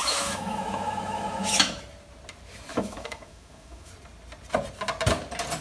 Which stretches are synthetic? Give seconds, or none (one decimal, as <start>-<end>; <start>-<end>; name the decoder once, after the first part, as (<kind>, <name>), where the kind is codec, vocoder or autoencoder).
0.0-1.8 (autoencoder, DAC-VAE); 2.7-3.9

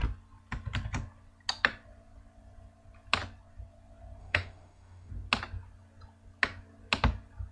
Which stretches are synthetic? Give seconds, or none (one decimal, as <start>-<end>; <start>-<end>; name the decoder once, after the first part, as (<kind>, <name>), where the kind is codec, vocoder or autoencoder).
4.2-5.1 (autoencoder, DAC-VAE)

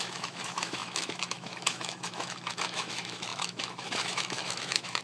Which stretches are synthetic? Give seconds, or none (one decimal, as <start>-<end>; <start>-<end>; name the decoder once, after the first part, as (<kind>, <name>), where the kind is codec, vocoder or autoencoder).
0.0-5.0 (autoencoder, DAC-VAE)

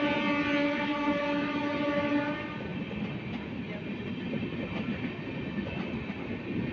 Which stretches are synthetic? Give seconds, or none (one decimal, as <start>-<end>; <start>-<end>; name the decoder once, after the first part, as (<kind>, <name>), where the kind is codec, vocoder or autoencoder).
0.6-1.5 (autoencoder, DAC-VAE)

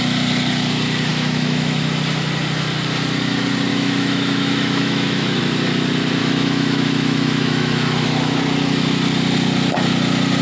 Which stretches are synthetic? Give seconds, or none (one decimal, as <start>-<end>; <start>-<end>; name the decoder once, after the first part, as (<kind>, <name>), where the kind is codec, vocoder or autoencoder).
1.1-1.8 (autoencoder, DAC-VAE); 3.7-5.4; 6.2-8.4

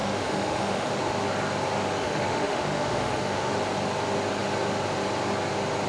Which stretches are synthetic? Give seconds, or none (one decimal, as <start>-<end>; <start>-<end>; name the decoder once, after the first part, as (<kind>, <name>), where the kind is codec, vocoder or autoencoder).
0.0-1.0 (autoencoder, DAC-VAE); 2.0-3.5

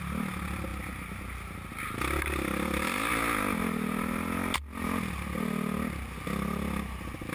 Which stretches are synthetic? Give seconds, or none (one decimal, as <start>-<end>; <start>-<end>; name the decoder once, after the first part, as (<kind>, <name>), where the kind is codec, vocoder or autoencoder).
none

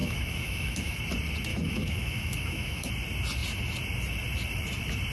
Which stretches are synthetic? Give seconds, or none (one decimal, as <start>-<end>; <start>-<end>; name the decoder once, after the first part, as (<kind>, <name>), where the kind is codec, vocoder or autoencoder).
0.0-1.0 (autoencoder, DAC-VAE); 1.5-2.9